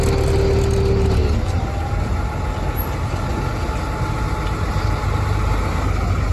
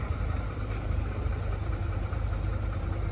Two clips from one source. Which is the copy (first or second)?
second